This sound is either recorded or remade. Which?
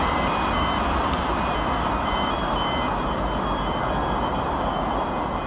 remade